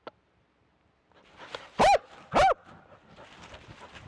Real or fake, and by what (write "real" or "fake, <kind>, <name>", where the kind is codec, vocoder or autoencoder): real